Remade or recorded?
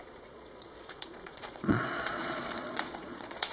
remade